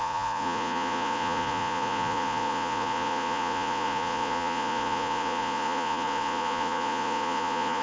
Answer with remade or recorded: remade